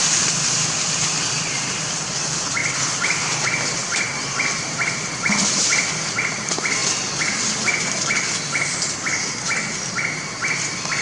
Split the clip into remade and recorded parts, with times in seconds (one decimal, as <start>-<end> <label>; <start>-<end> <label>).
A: 0.0-11.0 recorded